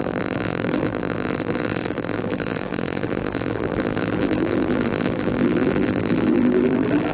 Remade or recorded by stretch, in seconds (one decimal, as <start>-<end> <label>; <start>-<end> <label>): 0.0-7.1 remade